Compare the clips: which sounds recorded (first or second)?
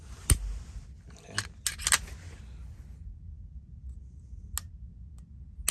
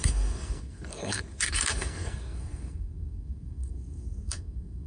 first